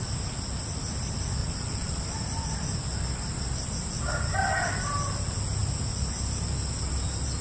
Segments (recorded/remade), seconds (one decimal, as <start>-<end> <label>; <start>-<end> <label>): 0.0-1.4 recorded; 1.4-2.0 remade; 2.0-7.4 recorded